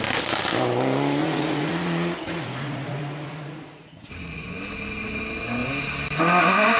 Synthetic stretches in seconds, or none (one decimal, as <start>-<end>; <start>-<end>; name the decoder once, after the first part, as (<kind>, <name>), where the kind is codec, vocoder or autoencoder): 1.2-4.6 (vocoder, Vocos)